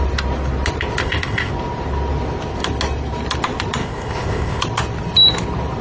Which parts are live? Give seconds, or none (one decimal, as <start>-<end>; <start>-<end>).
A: 0.0-1.0; 1.5-3.8; 4.6-5.8